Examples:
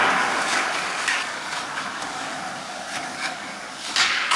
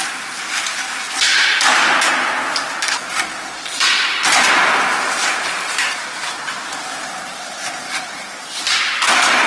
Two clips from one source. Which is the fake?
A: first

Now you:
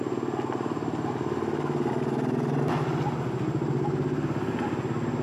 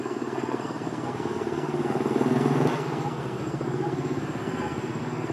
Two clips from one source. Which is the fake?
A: second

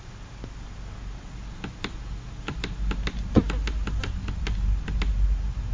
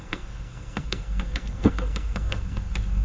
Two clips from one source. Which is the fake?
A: second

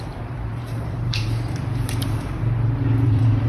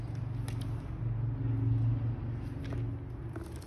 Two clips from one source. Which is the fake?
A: first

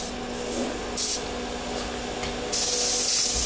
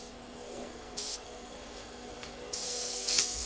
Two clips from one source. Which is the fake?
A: second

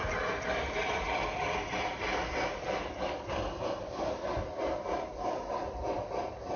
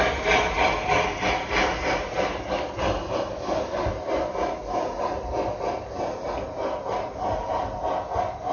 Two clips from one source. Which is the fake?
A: first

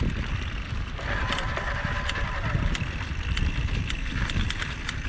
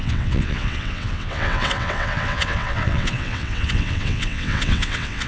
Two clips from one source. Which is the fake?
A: second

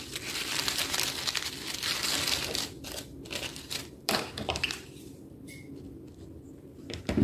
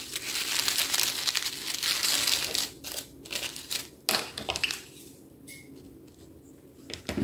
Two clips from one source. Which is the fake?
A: first